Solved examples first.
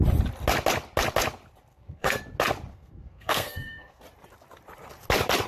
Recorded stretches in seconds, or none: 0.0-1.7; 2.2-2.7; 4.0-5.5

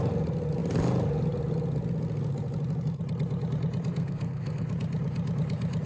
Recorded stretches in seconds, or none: 0.0-3.9; 4.7-5.9

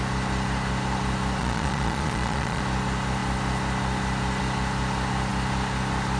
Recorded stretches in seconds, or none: 0.0-1.4; 2.6-6.2